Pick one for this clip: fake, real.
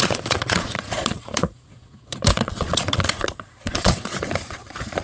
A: fake